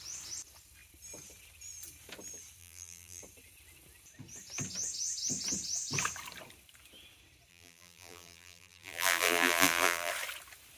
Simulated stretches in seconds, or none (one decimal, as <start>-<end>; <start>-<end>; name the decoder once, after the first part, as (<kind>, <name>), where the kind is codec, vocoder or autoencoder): 2.6-3.2 (vocoder, BigVGAN v2); 7.5-10.1